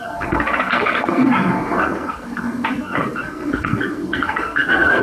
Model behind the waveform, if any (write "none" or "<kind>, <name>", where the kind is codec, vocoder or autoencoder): codec, SNAC